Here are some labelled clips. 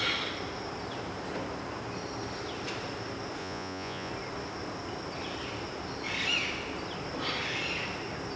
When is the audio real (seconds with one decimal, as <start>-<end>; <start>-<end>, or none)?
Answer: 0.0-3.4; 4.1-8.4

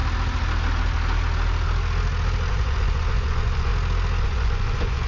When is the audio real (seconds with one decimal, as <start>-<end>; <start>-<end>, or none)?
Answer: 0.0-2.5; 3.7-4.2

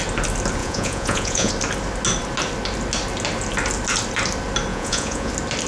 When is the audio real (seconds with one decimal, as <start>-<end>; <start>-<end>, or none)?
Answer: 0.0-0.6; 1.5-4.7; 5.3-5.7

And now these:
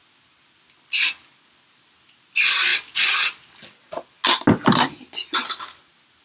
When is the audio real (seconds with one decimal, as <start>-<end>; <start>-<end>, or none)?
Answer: 0.0-6.2

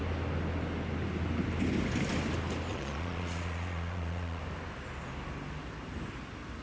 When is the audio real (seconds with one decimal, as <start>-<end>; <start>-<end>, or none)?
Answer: 0.0-2.7; 4.4-6.6